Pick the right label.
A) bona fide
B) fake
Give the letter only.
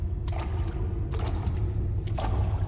A